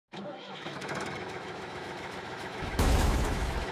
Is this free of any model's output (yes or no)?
no